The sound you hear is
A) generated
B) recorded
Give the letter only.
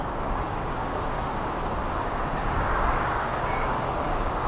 A